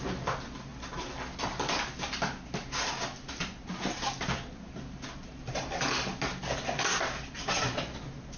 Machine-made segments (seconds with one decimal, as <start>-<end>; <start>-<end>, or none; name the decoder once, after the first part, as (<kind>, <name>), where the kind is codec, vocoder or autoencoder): none